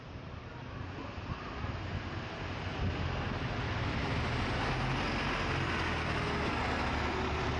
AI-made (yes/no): no